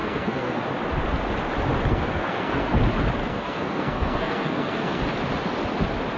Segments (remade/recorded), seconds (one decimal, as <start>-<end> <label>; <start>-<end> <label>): 0.0-0.6 remade; 0.6-1.9 recorded; 1.9-2.8 remade; 2.8-3.2 recorded; 3.2-5.0 remade; 5.0-6.2 recorded